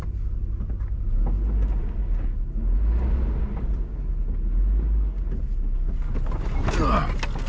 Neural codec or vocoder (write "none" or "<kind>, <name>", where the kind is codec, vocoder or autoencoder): none